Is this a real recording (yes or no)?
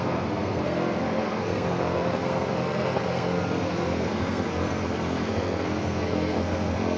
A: no